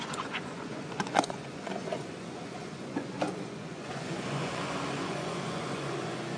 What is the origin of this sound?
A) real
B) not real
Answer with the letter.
B